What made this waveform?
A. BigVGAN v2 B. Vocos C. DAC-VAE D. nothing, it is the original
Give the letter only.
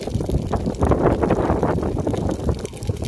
D